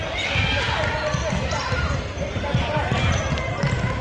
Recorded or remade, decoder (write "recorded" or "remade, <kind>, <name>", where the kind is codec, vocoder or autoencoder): recorded